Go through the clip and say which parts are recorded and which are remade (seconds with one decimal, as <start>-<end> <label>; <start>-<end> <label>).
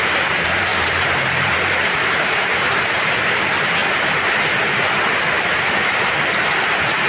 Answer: 0.0-3.8 remade; 3.8-5.7 recorded; 5.7-7.1 remade